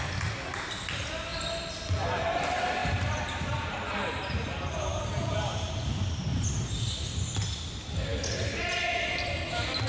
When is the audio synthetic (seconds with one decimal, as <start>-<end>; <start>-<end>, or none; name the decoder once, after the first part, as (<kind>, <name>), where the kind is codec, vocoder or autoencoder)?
2.8-6.2 (vocoder, BigVGAN v2)